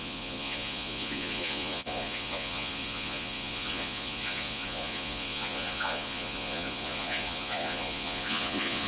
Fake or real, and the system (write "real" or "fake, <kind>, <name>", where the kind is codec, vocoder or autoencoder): fake, vocoder, Vocos